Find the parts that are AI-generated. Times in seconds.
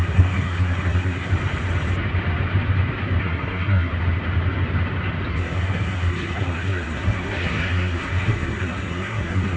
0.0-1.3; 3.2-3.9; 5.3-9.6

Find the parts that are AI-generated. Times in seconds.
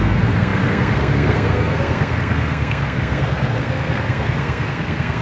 0.0-5.2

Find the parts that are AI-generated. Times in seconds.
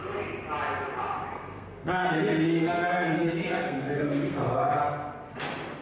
1.3-4.8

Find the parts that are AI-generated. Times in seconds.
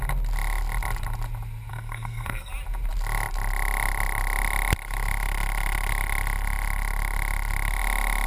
1.7-2.5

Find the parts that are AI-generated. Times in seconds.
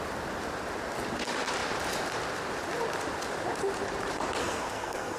4.4-5.2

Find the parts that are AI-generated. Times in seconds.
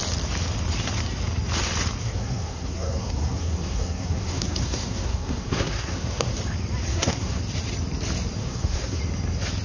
2.0-6.3; 6.9-7.4; 8.4-9.0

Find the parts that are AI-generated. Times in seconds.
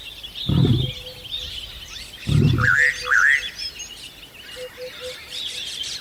none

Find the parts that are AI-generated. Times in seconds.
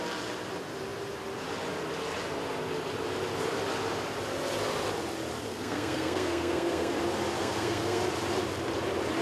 5.5-7.0; 7.4-8.0